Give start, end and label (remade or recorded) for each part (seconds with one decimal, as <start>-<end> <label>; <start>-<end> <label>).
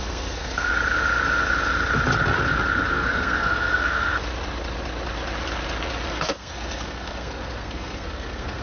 0.0-0.7 remade; 0.7-2.9 recorded; 2.9-4.1 remade; 4.1-6.1 recorded; 6.1-8.6 remade